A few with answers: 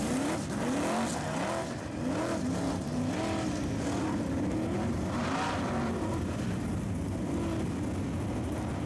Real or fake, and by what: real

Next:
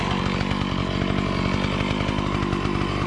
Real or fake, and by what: real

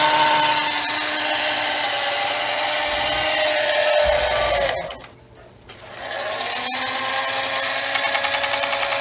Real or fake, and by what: real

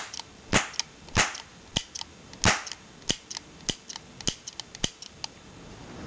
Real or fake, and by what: real